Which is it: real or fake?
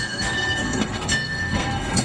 fake